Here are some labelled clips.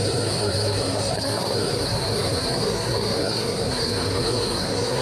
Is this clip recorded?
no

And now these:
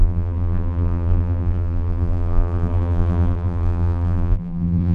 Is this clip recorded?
no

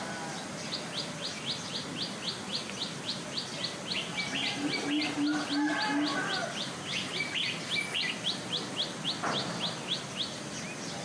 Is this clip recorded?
yes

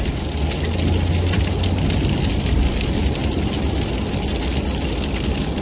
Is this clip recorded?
yes